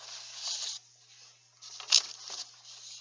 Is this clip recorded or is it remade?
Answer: recorded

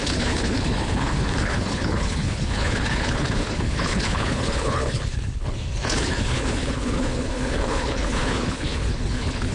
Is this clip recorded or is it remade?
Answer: remade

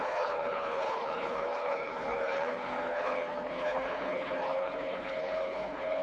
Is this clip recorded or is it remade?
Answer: remade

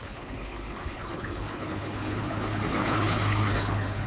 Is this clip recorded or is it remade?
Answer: remade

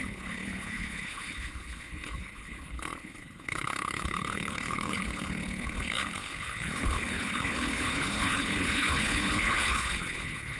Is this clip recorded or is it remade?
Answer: remade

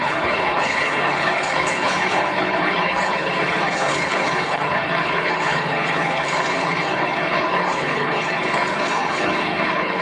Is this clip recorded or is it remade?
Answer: remade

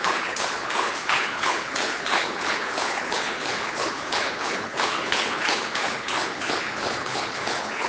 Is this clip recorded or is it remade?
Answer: remade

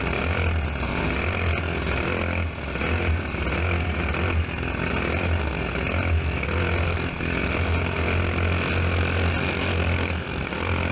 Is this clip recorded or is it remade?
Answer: recorded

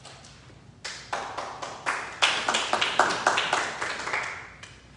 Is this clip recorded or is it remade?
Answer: recorded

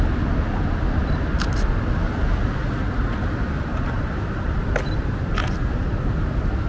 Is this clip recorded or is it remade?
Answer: recorded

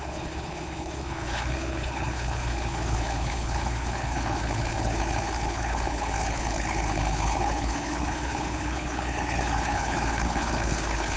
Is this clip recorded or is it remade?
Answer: remade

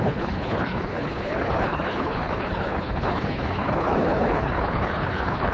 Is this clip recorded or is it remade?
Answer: remade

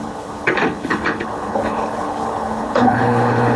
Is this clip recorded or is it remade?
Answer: remade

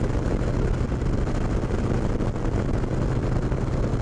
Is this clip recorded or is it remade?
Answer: recorded